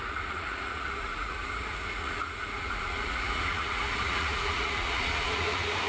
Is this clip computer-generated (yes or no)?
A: yes